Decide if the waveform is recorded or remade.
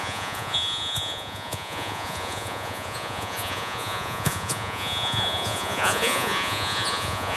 remade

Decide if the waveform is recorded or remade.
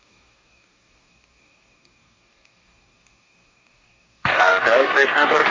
remade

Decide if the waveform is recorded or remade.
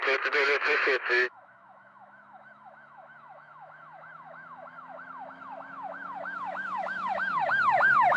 remade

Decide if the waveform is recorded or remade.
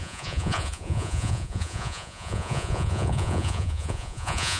remade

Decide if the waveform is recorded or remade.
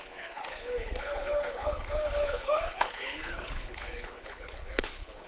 remade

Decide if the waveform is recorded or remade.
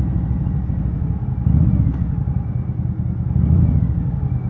recorded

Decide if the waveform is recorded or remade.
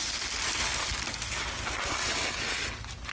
recorded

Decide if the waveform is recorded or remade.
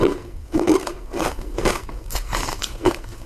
remade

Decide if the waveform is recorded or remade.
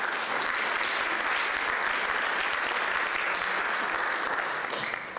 recorded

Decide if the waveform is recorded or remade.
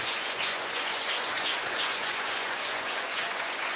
remade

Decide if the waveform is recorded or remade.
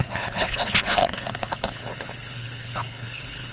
remade